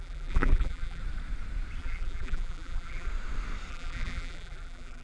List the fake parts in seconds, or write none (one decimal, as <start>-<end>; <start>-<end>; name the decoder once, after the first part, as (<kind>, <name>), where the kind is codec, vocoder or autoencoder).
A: 0.0-1.0 (vocoder, BigVGAN v2); 1.8-3.1; 3.7-5.0